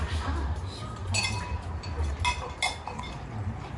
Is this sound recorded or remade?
recorded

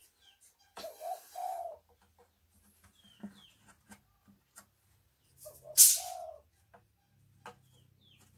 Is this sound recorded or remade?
recorded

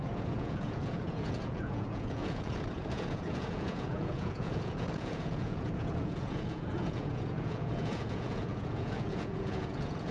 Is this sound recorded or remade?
remade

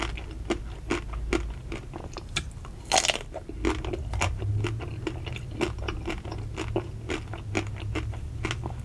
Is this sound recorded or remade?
recorded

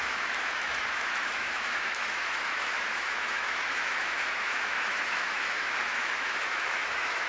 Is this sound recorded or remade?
remade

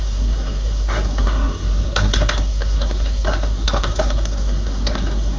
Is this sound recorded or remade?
remade